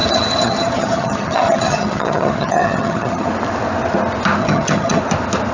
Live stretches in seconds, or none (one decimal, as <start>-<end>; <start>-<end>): 3.3-4.4; 5.0-5.5